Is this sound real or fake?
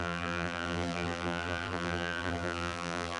fake